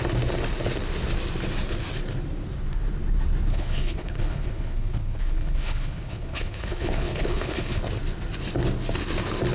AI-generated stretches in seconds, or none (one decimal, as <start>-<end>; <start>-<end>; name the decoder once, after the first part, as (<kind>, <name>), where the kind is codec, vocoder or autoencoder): 3.5-7.8 (codec, HILCodec)